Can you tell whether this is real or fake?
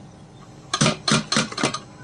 real